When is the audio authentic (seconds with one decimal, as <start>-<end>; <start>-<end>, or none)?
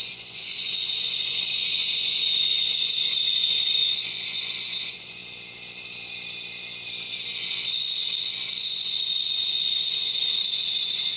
5.2-8.6